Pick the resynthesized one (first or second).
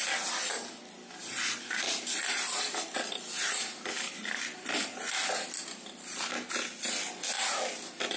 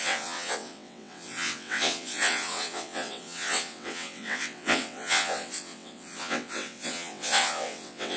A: second